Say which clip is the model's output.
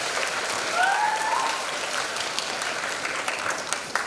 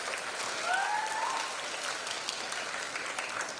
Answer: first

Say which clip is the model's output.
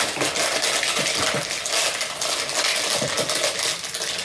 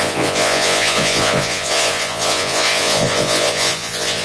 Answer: second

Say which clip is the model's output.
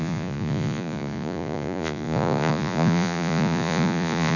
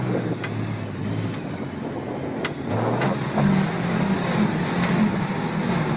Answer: first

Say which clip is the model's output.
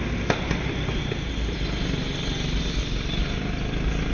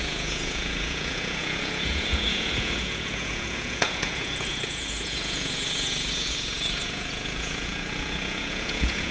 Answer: second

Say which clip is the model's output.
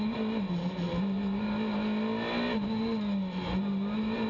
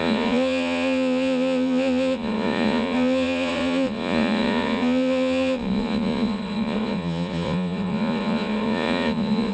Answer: second